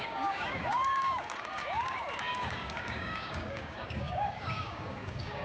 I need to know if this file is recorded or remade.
remade